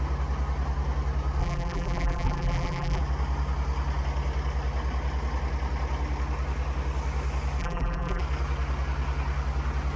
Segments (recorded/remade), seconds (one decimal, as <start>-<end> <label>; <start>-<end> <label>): 0.0-1.4 recorded; 1.4-3.0 remade; 3.0-7.6 recorded; 7.6-8.2 remade; 8.2-10.0 recorded